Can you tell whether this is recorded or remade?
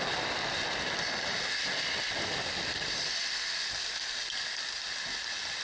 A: recorded